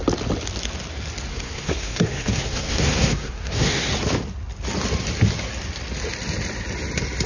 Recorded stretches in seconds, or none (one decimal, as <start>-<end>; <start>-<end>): 0.0-1.3; 3.9-7.3